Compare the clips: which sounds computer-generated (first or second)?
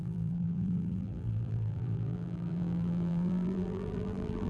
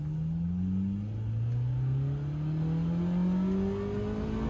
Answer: first